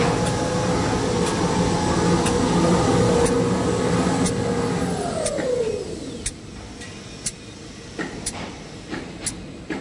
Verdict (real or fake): real